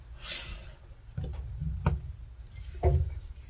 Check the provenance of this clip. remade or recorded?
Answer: recorded